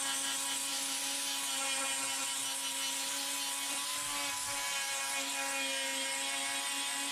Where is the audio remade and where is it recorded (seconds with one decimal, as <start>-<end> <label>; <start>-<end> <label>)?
0.0-7.1 recorded